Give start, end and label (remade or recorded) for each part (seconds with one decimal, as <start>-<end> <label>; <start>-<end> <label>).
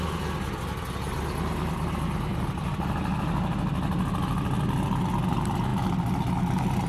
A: 0.0-2.3 recorded; 2.3-4.0 remade; 4.0-5.7 recorded; 5.7-6.2 remade; 6.2-6.9 recorded